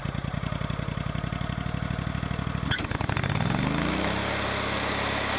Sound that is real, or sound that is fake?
real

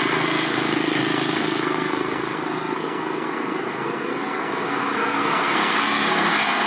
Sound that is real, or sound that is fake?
fake